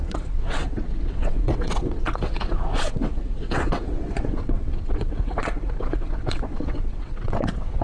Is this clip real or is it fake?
fake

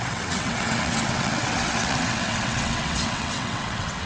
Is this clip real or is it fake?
fake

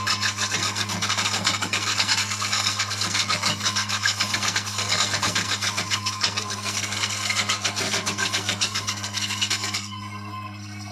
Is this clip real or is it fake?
fake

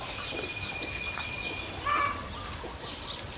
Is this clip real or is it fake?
real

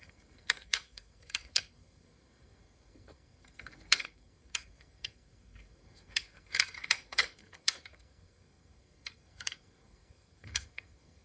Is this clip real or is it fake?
fake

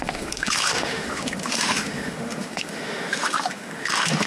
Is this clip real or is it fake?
fake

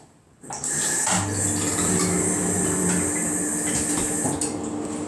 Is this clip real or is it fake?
real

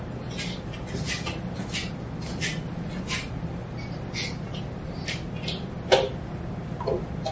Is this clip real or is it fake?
real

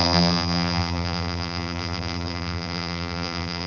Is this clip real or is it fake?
fake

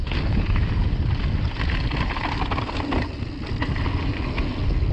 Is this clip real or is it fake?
real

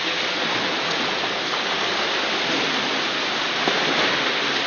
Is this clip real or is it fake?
real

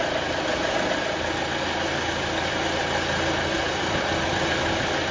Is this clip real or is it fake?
real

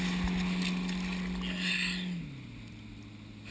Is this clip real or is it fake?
real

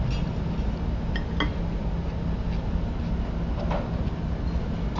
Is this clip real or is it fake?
real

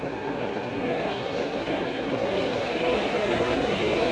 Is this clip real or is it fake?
fake